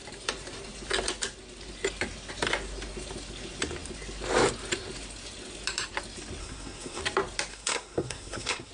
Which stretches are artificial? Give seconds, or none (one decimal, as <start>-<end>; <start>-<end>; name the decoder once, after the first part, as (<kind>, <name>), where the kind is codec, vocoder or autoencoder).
6.4-7.0 (codec, SNAC); 7.5-8.7